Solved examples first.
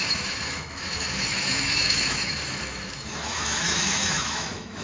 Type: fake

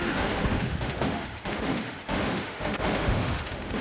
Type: fake